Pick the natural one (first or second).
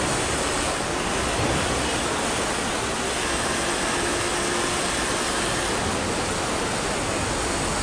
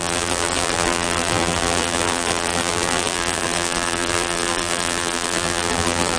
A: first